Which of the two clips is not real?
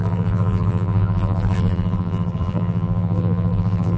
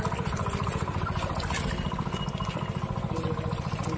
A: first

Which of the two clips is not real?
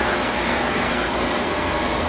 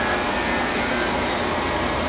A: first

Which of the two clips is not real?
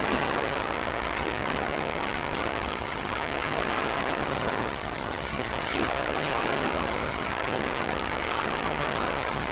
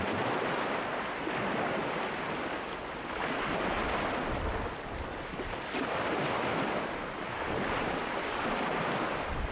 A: first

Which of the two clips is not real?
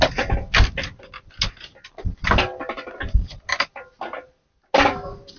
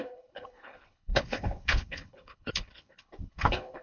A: second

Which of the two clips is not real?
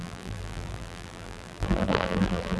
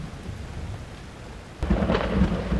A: first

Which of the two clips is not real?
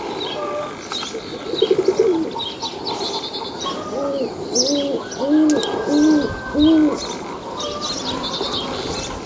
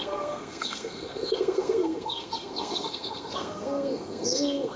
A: second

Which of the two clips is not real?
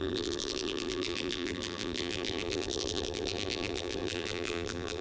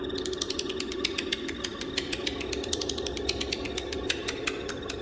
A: first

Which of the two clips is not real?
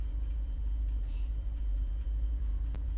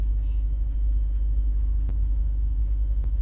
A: first